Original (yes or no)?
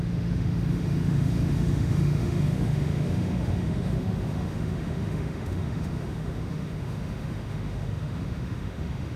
no